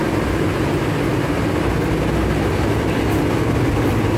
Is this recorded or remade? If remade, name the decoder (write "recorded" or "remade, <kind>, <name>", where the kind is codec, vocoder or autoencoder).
recorded